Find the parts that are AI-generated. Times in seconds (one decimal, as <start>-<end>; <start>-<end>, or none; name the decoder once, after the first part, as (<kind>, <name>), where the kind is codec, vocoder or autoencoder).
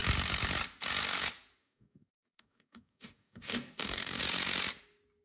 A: 1.6-4.2 (codec, DAC)